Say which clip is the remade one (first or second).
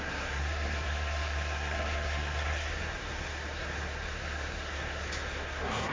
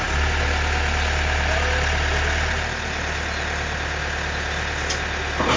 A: first